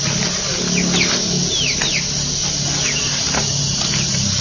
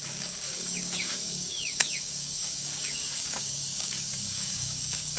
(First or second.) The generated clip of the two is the second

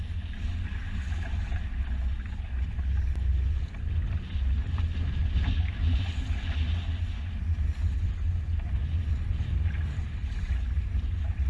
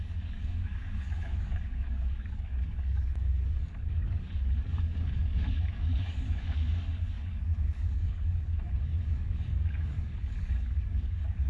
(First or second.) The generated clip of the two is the second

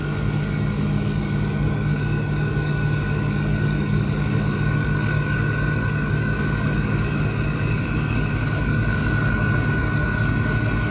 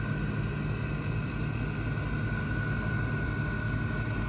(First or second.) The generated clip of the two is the first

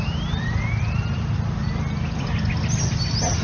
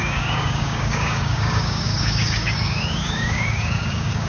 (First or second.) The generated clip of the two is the second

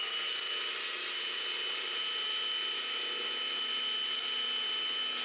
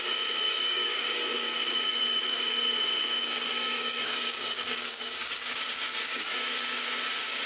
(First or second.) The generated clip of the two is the second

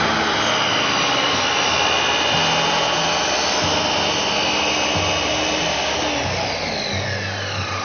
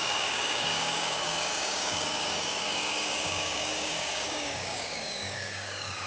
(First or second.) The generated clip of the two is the second